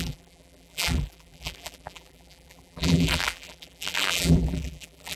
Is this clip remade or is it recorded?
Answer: remade